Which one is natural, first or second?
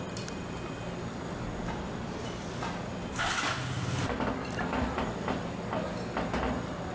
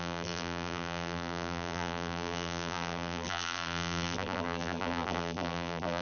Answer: first